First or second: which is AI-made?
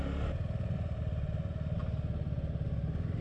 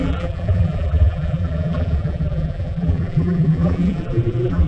second